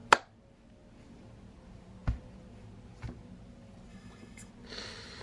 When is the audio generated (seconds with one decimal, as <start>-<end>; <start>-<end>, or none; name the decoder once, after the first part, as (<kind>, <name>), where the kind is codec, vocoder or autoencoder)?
3.9-4.5 (autoencoder, DAC-VAE)